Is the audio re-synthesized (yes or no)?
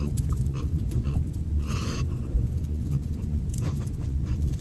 yes